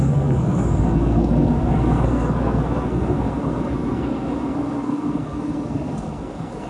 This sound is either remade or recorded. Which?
remade